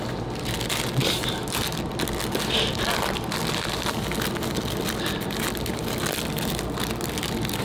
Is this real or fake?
real